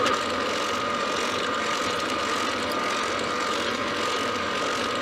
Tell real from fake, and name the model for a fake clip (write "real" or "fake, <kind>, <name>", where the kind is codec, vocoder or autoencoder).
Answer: fake, vocoder, BigVGAN v2